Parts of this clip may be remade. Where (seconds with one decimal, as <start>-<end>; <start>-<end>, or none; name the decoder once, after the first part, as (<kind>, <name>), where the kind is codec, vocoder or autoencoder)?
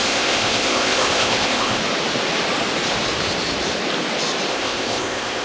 0.0-1.8 (codec, ZipCodec); 4.5-5.4